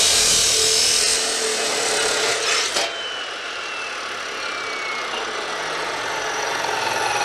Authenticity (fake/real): real